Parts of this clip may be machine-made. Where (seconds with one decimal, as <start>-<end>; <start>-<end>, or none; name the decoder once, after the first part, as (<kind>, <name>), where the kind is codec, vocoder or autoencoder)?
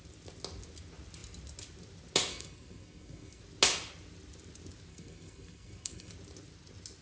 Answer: 2.3-3.4 (codec, SNAC); 4.9-6.1